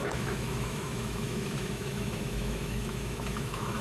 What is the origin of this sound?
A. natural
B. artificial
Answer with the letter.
B